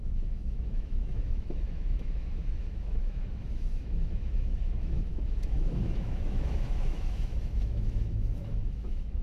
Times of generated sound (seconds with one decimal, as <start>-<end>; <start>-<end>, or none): 0.0-9.2